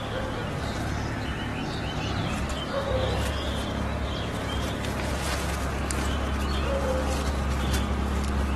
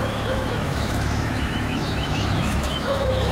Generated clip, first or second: second